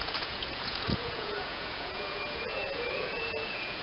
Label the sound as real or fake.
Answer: fake